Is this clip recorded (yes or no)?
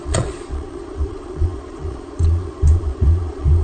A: no